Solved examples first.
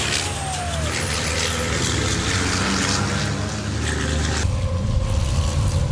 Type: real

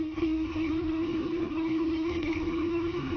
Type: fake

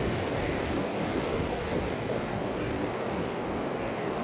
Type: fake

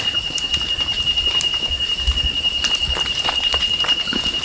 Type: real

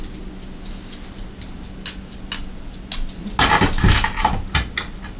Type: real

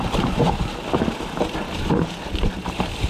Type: real